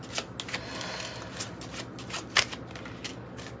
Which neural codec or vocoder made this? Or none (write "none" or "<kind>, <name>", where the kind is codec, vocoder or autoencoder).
none